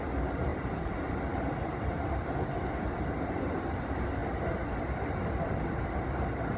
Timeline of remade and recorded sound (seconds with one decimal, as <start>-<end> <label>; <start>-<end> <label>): 0.0-0.5 recorded; 0.5-3.3 remade; 3.3-6.6 recorded